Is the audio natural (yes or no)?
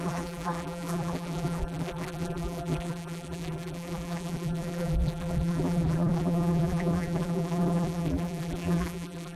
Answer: no